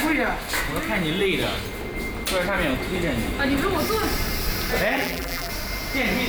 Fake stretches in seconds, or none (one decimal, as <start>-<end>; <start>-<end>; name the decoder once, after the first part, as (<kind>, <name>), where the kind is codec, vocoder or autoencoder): 4.9-5.5 (vocoder, BigVGAN v2)